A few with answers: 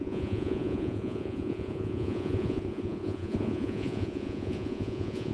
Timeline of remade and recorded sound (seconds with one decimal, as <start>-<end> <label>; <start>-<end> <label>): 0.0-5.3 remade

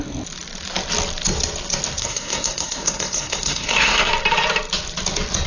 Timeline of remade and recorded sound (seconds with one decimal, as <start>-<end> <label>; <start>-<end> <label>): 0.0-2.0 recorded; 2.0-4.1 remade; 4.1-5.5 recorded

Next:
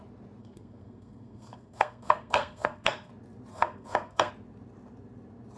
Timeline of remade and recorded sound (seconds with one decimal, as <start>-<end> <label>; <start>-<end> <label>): 0.0-0.4 recorded; 0.4-3.1 remade; 3.1-3.5 recorded; 3.5-4.3 remade; 4.3-5.6 recorded

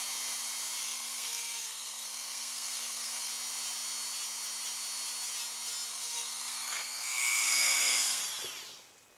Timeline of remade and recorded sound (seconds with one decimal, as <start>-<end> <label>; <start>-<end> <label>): 0.0-0.8 recorded; 0.8-3.3 remade; 3.3-5.9 recorded; 5.9-8.2 remade; 8.2-9.2 recorded

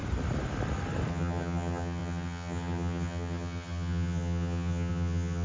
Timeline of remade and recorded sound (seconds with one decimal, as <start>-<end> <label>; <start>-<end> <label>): 0.0-1.1 recorded; 1.1-5.4 remade

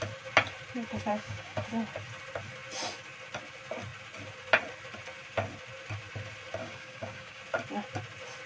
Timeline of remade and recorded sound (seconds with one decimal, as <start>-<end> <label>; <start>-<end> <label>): 0.0-1.1 recorded; 1.1-1.7 remade; 1.7-6.6 recorded; 6.6-7.4 remade; 7.4-8.5 recorded

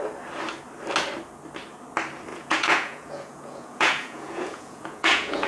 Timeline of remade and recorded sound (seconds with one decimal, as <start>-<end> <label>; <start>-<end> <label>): 0.0-2.3 recorded; 2.3-5.5 remade

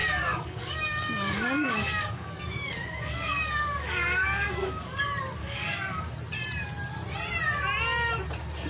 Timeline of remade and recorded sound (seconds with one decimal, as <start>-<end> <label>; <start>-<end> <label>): 0.0-5.0 remade; 5.0-5.4 recorded; 5.4-6.0 remade; 6.0-8.7 recorded